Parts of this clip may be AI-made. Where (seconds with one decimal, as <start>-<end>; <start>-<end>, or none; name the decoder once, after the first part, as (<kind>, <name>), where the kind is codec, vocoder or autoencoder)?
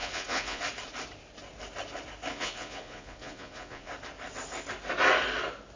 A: 0.0-0.6 (vocoder, Vocos); 2.3-3.9